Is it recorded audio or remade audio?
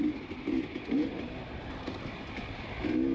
recorded